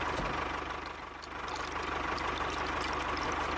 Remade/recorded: recorded